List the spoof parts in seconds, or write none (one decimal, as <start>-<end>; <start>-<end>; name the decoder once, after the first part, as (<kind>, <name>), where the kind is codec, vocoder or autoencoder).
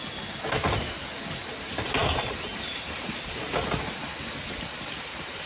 2.0-3.4 (vocoder, BigVGAN v2)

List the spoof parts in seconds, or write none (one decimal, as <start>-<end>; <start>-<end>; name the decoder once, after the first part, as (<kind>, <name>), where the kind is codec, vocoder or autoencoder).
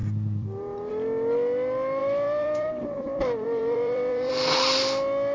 0.0-0.9 (vocoder, BigVGAN v2); 2.0-4.3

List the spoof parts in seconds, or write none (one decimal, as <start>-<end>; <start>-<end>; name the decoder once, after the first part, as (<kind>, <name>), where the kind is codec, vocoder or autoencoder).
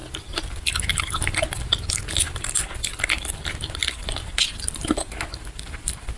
2.1-6.2 (vocoder, BigVGAN v2)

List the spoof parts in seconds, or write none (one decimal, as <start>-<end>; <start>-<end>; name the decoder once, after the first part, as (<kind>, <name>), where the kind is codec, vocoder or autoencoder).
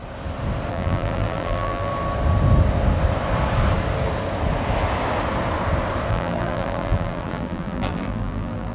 0.7-1.9 (vocoder, BigVGAN v2); 6.1-8.7